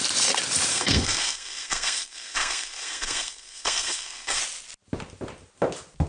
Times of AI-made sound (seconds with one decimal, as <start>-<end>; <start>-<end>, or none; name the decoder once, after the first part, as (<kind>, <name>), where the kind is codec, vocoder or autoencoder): 0.7-4.4 (codec, SNAC)